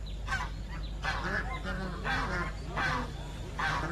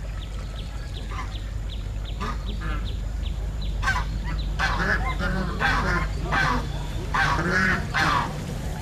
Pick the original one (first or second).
first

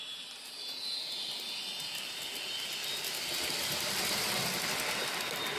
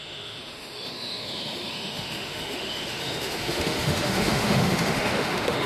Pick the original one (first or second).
first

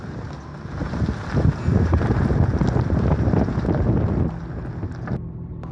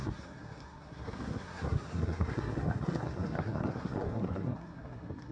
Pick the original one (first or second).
first